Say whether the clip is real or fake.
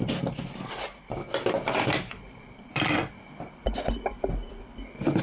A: real